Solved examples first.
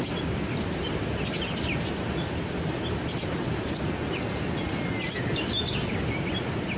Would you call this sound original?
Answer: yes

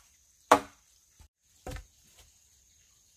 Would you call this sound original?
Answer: no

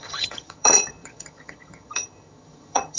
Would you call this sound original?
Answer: no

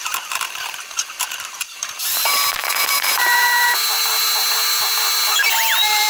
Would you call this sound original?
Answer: no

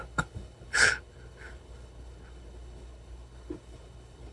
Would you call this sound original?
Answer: no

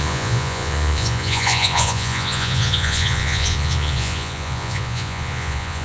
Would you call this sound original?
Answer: no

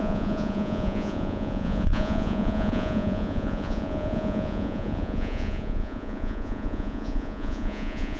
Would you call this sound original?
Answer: no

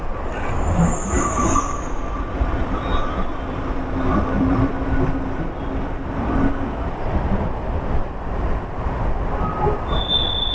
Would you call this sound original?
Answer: yes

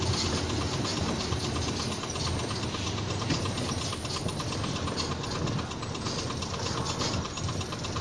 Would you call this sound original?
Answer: yes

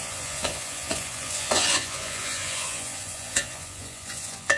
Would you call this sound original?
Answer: no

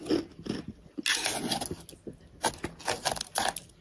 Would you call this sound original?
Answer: yes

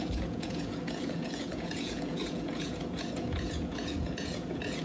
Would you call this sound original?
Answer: no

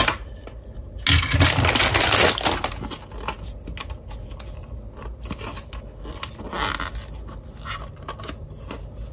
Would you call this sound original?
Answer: yes